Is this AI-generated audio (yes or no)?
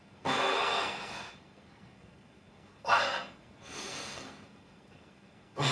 yes